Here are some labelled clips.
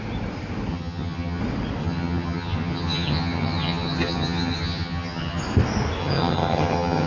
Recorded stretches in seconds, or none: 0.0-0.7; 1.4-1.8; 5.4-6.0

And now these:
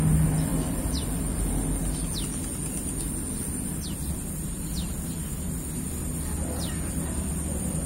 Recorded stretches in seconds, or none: 0.0-7.9

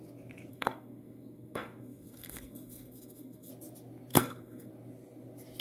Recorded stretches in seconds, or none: 0.0-0.5; 3.5-4.1; 4.7-5.6

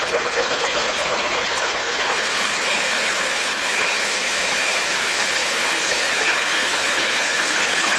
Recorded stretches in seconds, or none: none